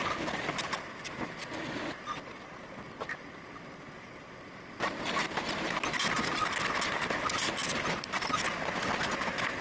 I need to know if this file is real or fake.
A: real